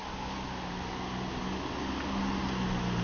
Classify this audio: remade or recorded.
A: recorded